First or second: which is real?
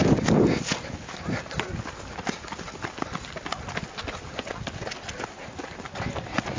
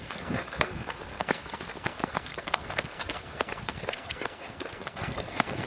first